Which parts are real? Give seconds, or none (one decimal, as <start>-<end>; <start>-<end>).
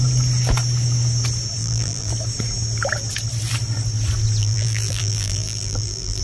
0.0-1.6; 2.1-4.4